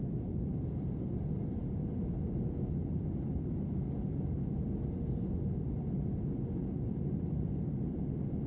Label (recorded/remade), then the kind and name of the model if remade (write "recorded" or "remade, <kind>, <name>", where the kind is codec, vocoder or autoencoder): recorded